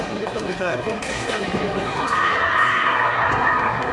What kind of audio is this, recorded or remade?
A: remade